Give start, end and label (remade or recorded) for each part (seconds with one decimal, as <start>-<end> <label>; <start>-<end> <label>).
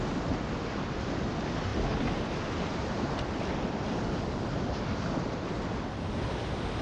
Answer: 0.0-6.8 recorded